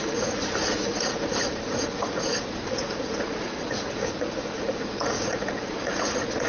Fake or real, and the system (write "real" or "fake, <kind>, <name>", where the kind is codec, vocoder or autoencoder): fake, vocoder, Vocos